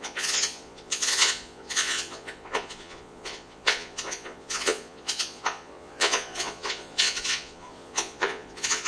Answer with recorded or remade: remade